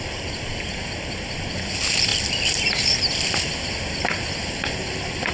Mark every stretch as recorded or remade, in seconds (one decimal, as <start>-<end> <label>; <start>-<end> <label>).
0.0-5.3 recorded